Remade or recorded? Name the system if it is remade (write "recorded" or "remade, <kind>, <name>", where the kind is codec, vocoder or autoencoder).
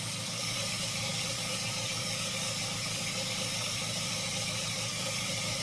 remade, codec, DAC